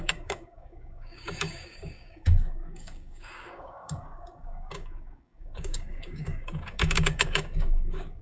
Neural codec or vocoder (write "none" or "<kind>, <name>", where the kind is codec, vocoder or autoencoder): codec, DAC